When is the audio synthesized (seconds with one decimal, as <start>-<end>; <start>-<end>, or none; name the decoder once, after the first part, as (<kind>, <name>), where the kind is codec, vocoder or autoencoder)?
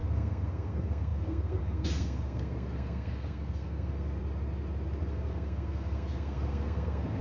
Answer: 0.0-4.2 (codec, SNAC); 5.0-7.2